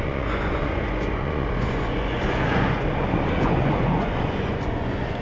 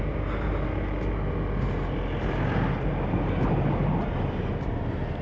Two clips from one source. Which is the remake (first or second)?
first